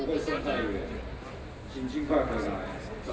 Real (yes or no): yes